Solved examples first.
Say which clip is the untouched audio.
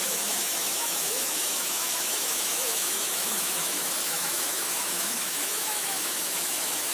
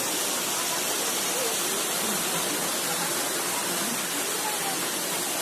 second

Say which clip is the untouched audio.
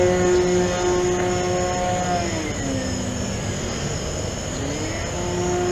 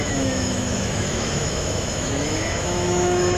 first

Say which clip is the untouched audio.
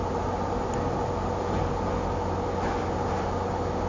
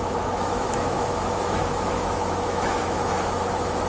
first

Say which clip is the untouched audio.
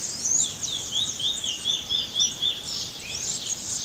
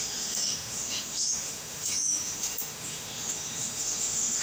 first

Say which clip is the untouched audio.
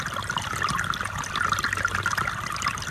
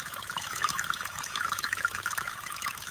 first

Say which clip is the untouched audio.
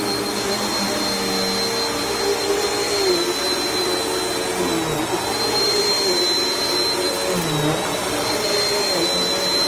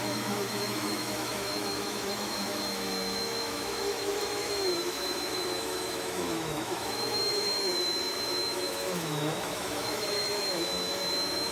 first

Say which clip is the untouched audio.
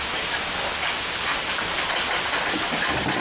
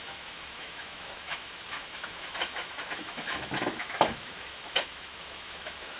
first